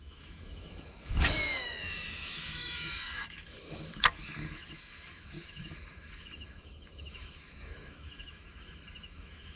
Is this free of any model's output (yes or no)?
no